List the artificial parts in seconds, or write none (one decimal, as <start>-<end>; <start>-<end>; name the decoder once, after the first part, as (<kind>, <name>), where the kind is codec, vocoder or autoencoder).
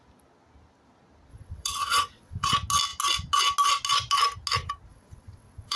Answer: 1.3-2.5 (vocoder, WaveNeXt); 4.9-5.8